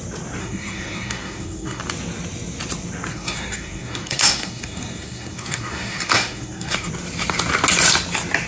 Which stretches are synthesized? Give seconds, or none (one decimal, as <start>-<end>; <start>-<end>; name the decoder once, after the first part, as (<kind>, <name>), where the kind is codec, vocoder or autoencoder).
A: 0.4-1.8 (codec, SNAC); 3.1-6.9